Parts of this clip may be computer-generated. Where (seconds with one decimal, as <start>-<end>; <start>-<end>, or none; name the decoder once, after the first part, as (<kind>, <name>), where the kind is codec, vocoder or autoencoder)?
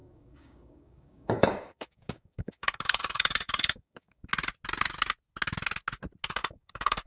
0.0-4.3 (codec, DAC); 6.4-7.1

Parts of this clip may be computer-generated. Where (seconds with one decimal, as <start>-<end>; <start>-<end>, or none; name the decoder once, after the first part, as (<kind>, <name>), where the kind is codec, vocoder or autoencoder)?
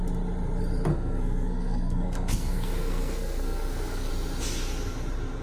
0.9-4.1 (codec, SNAC)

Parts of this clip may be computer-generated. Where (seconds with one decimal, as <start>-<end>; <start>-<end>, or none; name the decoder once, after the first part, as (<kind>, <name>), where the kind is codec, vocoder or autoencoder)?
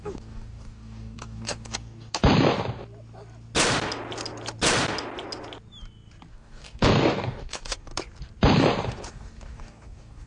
0.0-2.2 (codec, DAC); 6.3-7.9; 9.1-10.3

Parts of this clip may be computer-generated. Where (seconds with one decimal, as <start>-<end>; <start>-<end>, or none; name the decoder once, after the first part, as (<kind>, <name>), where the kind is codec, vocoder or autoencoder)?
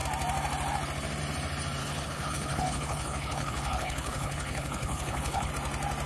1.8-5.5 (codec, HILCodec)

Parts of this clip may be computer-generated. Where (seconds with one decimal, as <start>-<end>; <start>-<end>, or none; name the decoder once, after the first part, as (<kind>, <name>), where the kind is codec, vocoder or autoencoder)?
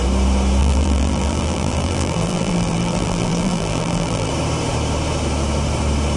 0.6-4.3 (vocoder, BigVGAN v2)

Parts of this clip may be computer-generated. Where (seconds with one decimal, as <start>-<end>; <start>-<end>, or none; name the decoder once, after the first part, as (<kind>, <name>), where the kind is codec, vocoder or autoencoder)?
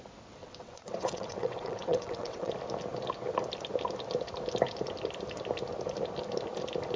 0.4-2.5 (vocoder, WaveNeXt)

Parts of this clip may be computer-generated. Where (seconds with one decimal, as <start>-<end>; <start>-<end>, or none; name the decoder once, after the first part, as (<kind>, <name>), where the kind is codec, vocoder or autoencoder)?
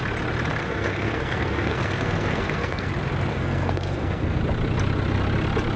0.6-2.9 (codec, SNAC); 3.3-4.4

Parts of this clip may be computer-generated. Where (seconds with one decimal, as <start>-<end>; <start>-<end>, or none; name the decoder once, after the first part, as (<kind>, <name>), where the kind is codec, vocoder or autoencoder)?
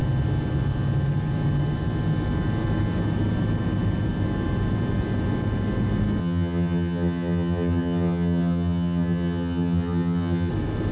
6.2-10.5 (vocoder, HiFi-GAN)